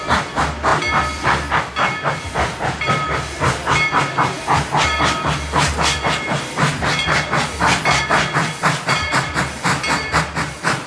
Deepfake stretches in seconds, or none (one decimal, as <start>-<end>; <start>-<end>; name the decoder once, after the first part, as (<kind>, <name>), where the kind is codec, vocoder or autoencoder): none